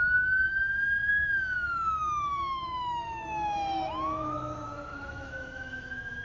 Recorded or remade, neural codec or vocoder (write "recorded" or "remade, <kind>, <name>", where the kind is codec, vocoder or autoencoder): remade, autoencoder, DAC-VAE